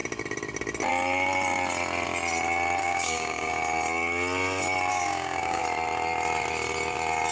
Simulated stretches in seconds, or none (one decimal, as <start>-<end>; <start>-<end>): 2.8-3.5; 4.9-5.6